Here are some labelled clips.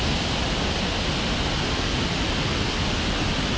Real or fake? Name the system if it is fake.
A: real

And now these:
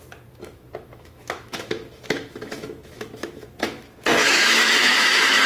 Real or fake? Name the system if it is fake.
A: fake, autoencoder, DAC-VAE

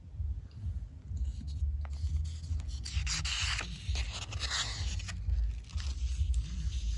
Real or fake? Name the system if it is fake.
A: real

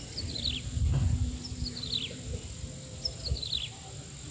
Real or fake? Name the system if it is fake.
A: real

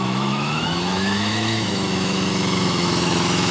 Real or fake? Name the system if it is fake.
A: fake, autoencoder, DAC-VAE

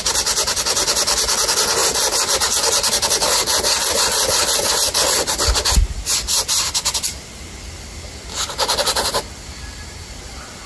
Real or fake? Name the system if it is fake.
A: real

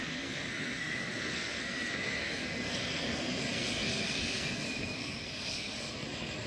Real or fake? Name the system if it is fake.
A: fake, codec, SNAC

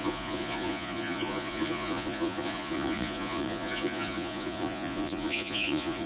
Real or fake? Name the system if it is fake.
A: fake, vocoder, Vocos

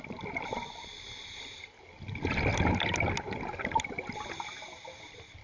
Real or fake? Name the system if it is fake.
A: real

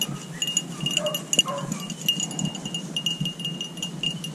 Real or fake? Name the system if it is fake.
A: real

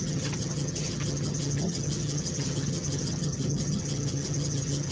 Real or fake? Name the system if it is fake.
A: fake, vocoder, HiFi-GAN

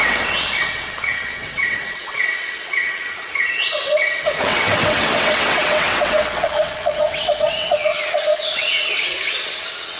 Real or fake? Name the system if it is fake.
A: fake, vocoder, WaveNeXt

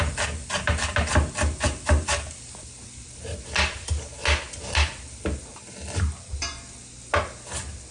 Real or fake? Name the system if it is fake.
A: real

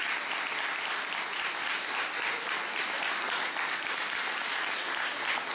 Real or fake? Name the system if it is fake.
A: fake, vocoder, BigVGAN v2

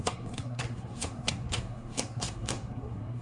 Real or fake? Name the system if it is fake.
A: fake, codec, SNAC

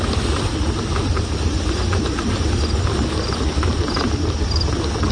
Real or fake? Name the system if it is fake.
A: real